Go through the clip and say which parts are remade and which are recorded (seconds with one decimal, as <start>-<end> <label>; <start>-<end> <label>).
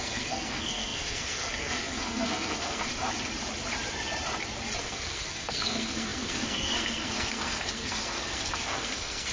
0.0-2.9 remade; 2.9-4.8 recorded; 4.8-9.3 remade